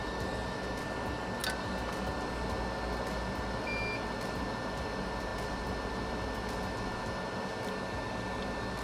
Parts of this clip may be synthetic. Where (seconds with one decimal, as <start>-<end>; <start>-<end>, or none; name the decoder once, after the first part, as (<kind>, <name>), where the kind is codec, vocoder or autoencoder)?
none